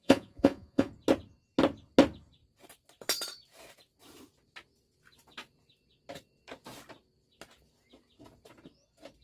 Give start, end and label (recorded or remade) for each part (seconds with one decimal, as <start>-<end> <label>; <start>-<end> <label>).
0.0-0.9 remade; 0.9-9.2 recorded